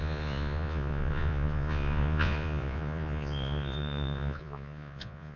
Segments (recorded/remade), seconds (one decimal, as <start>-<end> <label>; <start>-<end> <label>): 0.0-5.4 remade